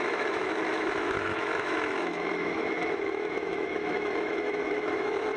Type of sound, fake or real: fake